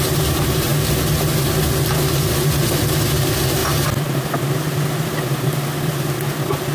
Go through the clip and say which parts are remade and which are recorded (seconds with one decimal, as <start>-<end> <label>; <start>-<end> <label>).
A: 0.0-6.7 recorded